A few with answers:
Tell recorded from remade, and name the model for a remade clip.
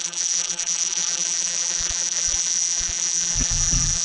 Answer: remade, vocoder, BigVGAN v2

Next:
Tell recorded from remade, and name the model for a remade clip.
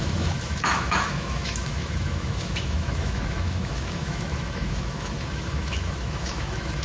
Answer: remade, autoencoder, DAC-VAE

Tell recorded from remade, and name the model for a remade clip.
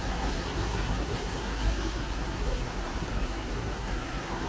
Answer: remade, codec, SNAC